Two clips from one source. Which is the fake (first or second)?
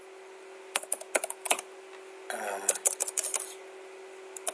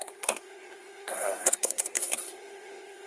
second